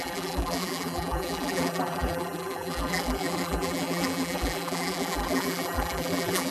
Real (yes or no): no